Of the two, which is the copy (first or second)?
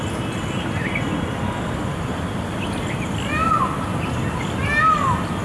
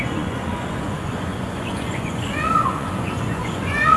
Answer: second